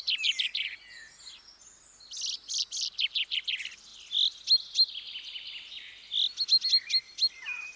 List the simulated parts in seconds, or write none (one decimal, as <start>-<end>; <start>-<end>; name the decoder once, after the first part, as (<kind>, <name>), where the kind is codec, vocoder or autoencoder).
none